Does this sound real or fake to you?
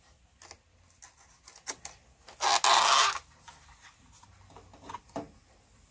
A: real